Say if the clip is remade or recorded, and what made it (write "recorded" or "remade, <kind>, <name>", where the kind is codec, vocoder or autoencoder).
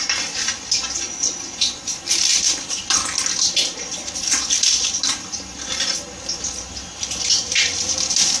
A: recorded